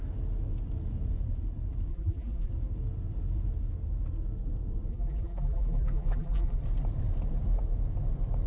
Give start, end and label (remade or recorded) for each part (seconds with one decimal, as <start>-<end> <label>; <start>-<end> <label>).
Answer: 0.0-1.9 recorded; 1.9-2.5 remade; 2.5-4.9 recorded; 4.9-6.6 remade; 6.6-8.5 recorded